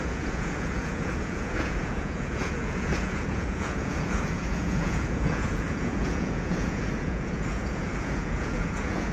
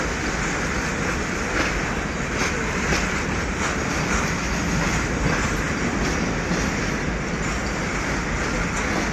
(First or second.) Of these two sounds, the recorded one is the second